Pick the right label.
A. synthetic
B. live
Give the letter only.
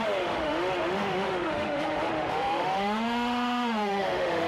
A